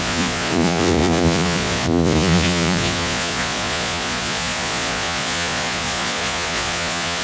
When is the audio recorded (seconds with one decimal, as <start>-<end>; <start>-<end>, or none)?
none